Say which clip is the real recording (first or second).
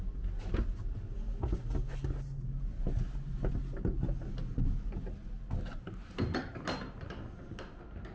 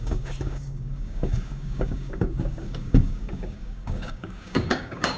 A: first